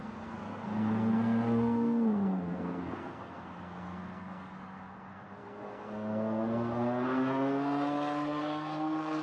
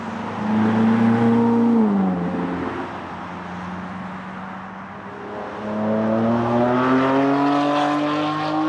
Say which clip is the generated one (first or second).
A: first